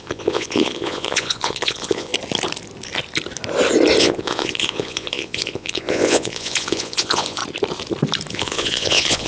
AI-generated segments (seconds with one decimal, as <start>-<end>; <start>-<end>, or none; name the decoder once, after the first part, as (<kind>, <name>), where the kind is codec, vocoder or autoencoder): 0.0-2.1 (vocoder, Vocos); 4.0-7.4; 8.3-9.3